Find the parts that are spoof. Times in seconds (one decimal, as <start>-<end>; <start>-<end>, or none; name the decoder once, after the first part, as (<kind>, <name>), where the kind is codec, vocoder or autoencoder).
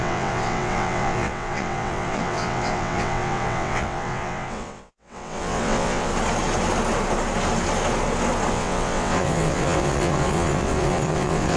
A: 0.0-6.1 (vocoder, WaveNeXt); 8.5-11.6